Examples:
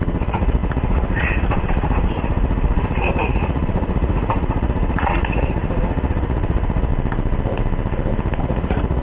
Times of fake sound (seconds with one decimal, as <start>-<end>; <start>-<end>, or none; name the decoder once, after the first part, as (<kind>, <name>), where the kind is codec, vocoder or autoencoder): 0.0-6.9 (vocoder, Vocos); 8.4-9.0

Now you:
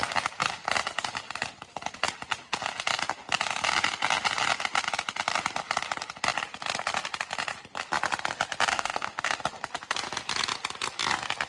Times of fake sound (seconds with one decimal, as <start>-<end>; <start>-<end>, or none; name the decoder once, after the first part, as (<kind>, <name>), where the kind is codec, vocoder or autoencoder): 8.7-9.4 (autoencoder, DAC-VAE)

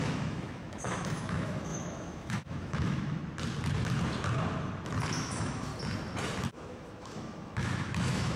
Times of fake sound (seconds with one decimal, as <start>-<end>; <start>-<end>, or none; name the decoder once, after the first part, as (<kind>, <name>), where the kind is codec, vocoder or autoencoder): 0.0-3.2 (autoencoder, DAC-VAE); 5.2-5.7; 6.5-8.4

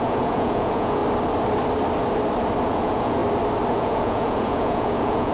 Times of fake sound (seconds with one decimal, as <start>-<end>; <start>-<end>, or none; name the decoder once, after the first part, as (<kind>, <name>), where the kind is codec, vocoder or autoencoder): 0.0-1.0 (vocoder, Vocos); 2.6-3.2; 3.7-5.3

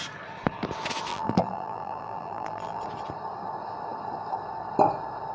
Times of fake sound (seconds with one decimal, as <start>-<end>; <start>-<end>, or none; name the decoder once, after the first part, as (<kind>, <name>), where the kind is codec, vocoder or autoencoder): 1.1-2.8 (vocoder, BigVGAN v2)

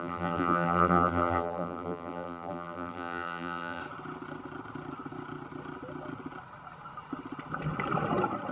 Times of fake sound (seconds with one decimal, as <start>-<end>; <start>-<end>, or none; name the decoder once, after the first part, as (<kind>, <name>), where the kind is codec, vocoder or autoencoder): 0.0-3.8 (vocoder, BigVGAN v2)